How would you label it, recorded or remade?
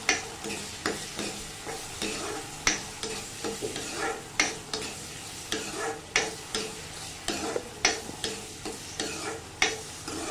recorded